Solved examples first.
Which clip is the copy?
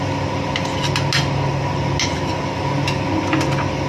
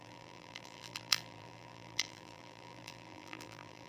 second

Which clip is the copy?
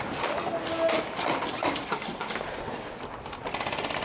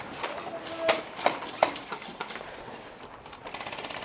second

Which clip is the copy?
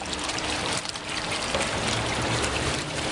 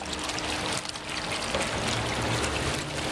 first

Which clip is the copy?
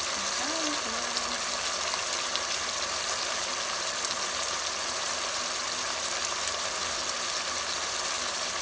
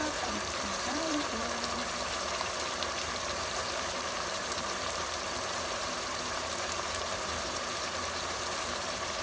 second